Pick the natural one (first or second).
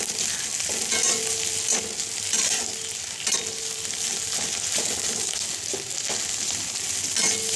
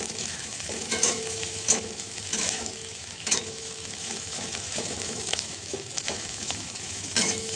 first